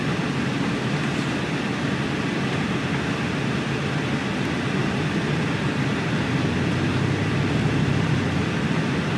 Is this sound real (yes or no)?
yes